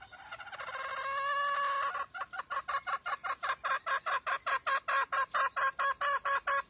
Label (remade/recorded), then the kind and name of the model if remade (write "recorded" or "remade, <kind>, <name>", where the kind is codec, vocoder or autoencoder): recorded